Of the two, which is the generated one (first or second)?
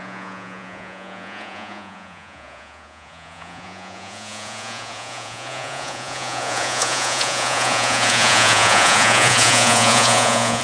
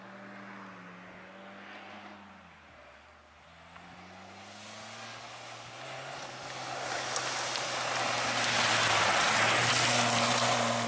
first